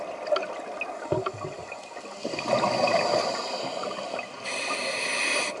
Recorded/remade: recorded